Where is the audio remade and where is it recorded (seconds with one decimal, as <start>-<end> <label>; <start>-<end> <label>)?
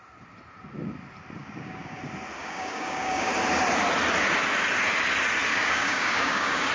0.0-1.4 recorded; 1.4-2.0 remade; 2.0-2.4 recorded; 2.4-3.3 remade; 3.3-5.5 recorded; 5.5-6.7 remade